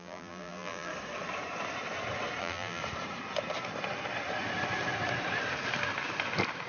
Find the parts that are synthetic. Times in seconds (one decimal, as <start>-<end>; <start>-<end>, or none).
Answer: 0.0-0.9; 2.4-2.8